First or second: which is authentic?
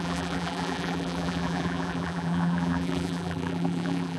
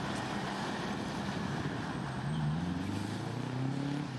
second